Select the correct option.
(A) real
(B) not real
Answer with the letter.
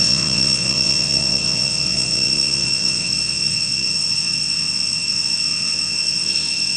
B